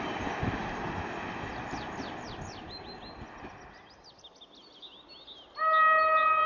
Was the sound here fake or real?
real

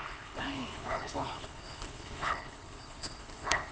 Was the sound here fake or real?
fake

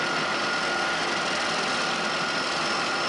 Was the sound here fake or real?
real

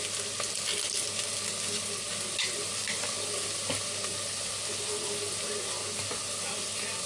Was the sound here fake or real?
real